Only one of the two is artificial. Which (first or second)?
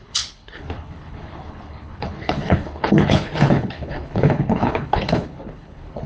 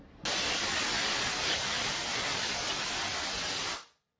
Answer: first